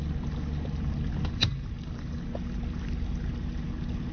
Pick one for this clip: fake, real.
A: real